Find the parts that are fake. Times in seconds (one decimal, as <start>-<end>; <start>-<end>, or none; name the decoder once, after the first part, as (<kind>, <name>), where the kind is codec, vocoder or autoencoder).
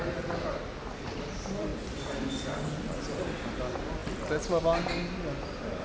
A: 0.9-1.7 (vocoder, BigVGAN v2); 3.5-4.0; 4.6-5.8